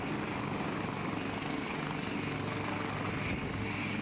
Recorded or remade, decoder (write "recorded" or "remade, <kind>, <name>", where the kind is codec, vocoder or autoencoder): recorded